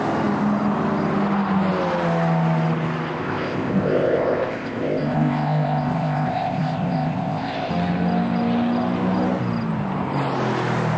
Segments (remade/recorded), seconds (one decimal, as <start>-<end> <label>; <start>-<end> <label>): 0.0-3.2 recorded; 3.2-7.7 remade; 7.7-11.0 recorded